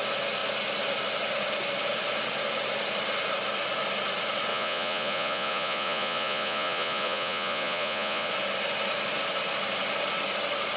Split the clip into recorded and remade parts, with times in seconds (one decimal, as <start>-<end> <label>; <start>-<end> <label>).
0.0-4.5 recorded; 4.5-8.3 remade; 8.3-10.8 recorded